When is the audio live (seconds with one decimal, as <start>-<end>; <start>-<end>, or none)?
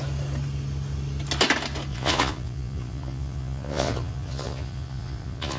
0.0-1.9